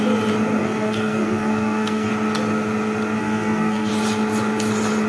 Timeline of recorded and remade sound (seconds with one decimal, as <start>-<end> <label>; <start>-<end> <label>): 0.0-0.6 recorded; 0.6-2.1 remade; 2.1-3.2 recorded; 3.2-3.9 remade; 3.9-5.1 recorded